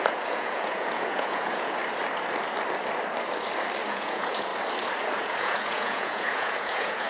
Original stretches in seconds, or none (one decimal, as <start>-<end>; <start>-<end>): 1.8-3.9; 4.5-5.2